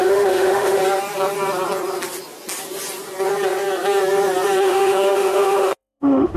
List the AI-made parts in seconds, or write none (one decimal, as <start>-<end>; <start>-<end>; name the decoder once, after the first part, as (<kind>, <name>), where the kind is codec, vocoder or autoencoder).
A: 0.0-0.8 (autoencoder, DAC-VAE); 4.6-6.4